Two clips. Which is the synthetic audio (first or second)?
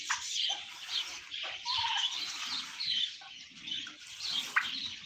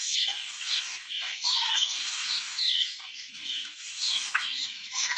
second